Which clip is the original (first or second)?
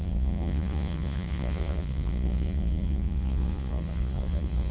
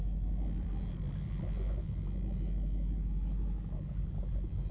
second